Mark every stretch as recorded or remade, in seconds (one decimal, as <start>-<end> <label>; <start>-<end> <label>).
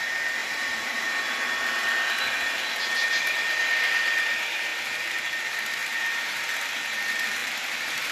0.0-0.4 recorded; 0.4-1.0 remade; 1.0-5.8 recorded; 5.8-6.4 remade; 6.4-7.4 recorded; 7.4-8.1 remade